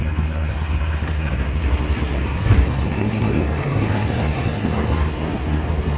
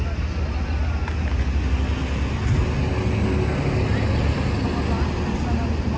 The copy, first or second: first